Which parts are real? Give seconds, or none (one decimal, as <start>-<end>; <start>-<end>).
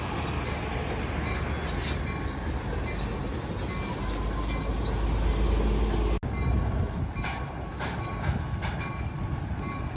0.0-7.7; 8.3-10.0